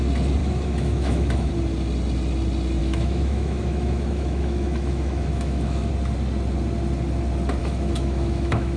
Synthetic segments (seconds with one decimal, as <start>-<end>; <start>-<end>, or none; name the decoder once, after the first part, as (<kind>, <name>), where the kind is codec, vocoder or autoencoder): 0.4-1.5 (autoencoder, DAC-VAE); 2.8-5.9; 7.6-8.8